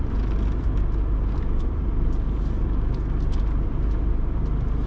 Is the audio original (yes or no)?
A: yes